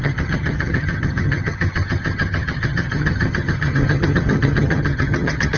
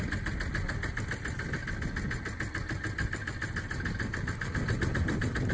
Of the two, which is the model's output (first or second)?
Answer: first